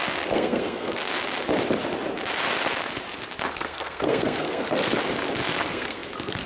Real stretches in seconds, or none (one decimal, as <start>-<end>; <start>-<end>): 1.1-3.5; 4.9-5.4